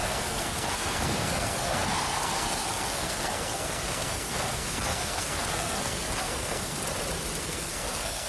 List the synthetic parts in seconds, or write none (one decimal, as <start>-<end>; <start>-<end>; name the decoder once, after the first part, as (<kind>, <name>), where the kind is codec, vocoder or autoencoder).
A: 0.0-6.8 (codec, SNAC); 7.4-8.3